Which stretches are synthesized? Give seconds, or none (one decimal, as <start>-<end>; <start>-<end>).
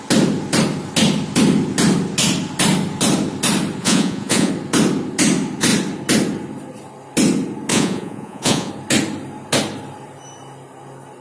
3.8-4.5; 7.7-8.7